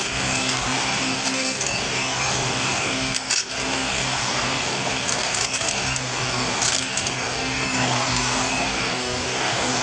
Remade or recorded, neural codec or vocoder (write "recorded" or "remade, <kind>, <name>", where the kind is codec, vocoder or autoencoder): remade, codec, DAC